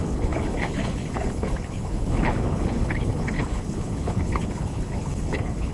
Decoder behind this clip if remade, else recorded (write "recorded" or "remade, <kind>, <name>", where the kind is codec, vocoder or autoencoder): remade, codec, HILCodec